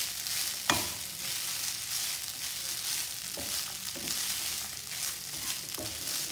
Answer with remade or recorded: recorded